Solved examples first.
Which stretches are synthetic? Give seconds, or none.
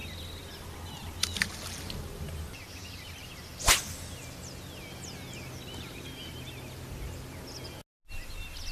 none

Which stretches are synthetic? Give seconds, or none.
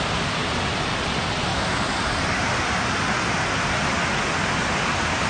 none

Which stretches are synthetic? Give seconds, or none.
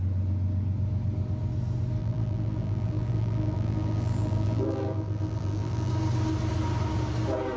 2.0-5.9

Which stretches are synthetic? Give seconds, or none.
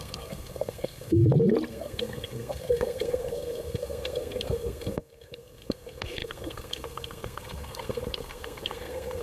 0.0-1.2; 1.7-9.2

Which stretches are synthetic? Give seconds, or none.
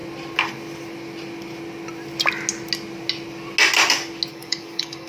4.3-5.1